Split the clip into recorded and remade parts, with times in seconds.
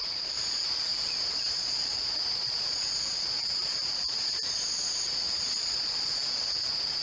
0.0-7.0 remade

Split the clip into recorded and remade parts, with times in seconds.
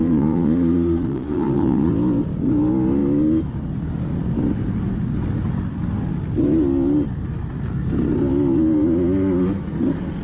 0.0-1.9 remade; 1.9-10.2 recorded